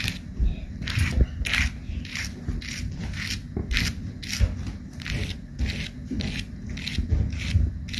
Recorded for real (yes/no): yes